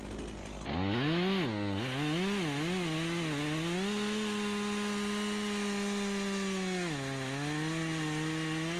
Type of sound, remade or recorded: recorded